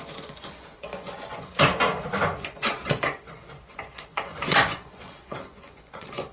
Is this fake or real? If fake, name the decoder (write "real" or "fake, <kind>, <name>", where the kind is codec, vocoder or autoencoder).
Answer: fake, vocoder, Vocos